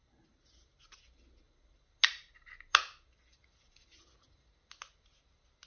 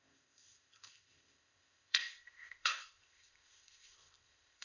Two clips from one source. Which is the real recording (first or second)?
first